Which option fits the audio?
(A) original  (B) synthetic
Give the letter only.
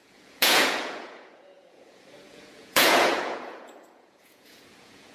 B